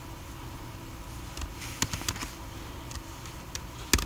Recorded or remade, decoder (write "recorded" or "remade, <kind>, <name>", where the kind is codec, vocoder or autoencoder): recorded